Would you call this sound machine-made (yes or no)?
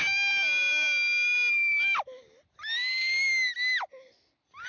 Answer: no